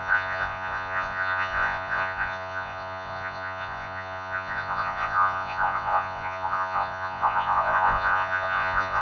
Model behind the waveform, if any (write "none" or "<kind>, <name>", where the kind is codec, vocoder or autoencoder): vocoder, Vocos